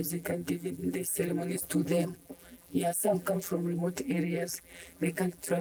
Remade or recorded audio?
remade